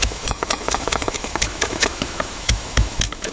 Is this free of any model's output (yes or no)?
no